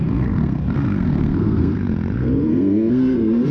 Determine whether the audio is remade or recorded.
remade